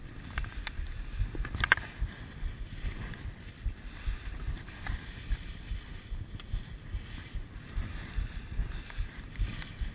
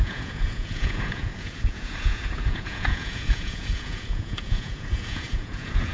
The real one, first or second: first